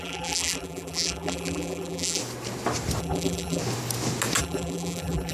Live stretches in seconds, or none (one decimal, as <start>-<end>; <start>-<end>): 2.2-3.0; 3.6-4.4